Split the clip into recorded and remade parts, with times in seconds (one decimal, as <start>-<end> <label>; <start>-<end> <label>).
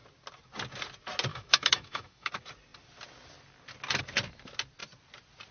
0.0-1.3 recorded; 1.3-2.3 remade; 2.3-5.5 recorded